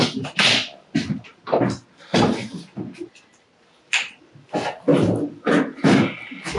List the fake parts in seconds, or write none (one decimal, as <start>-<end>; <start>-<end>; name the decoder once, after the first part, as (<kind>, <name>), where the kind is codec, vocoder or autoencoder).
none